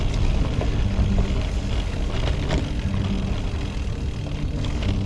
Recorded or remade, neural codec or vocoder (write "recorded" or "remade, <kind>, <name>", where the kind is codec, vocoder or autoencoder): recorded